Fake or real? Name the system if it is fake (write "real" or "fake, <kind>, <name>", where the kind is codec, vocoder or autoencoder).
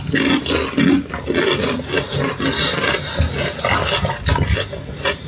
real